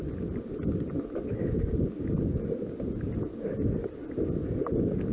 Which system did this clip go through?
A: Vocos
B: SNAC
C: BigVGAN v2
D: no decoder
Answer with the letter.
D